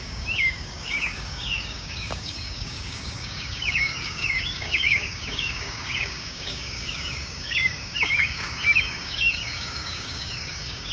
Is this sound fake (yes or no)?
yes